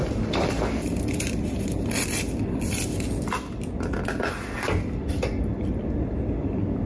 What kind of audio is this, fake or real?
real